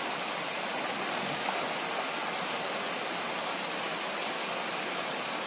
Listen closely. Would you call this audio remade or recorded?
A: recorded